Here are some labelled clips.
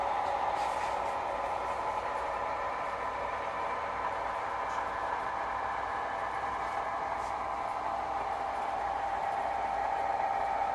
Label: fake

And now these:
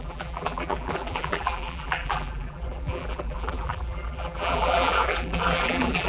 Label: fake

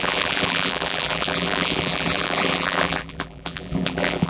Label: fake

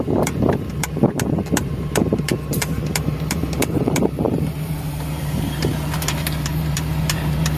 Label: fake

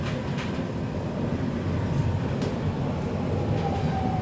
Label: real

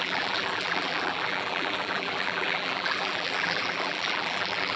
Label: fake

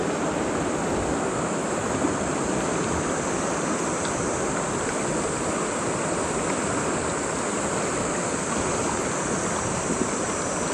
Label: real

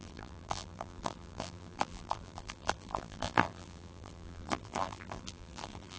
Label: fake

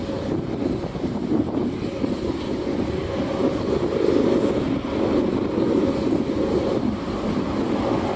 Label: real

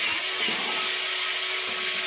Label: real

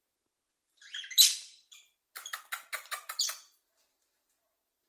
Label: fake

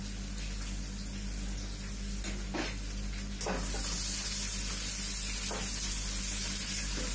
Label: real